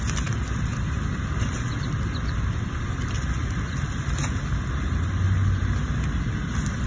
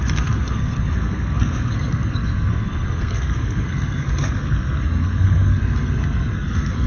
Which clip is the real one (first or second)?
first